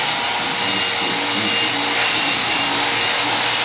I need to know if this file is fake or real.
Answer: real